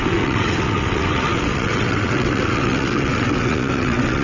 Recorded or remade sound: remade